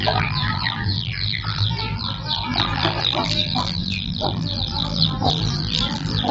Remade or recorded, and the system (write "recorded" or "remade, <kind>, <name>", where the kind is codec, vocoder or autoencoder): remade, vocoder, BigVGAN v2